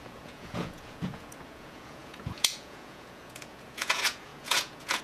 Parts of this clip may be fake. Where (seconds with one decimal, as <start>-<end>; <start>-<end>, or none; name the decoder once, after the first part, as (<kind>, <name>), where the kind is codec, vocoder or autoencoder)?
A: 0.0-5.0 (vocoder, Vocos)